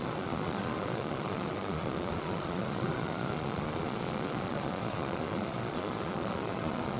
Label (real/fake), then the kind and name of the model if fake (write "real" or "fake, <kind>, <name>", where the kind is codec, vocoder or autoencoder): fake, vocoder, Vocos